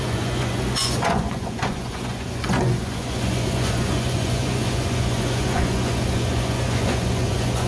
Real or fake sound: fake